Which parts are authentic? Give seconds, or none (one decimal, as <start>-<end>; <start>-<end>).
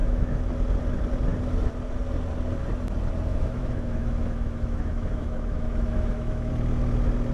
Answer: 0.5-3.3; 6.5-7.3